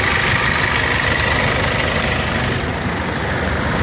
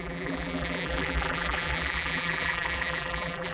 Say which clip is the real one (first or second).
first